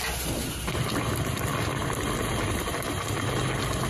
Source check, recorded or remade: recorded